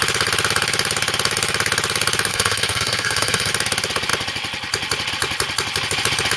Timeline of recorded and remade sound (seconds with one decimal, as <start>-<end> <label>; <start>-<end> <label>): 0.0-2.3 recorded; 2.3-3.5 remade; 3.5-6.4 recorded